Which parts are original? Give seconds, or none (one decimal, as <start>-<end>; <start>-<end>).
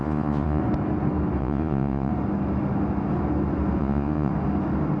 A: 0.6-1.4; 2.1-3.8; 4.3-5.0